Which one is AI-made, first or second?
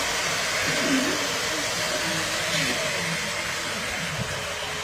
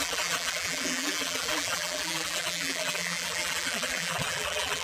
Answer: second